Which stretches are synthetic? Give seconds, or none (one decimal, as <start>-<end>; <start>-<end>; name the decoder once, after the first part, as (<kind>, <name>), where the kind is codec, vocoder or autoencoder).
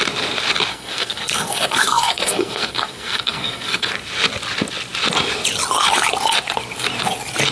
0.7-3.9 (codec, SNAC)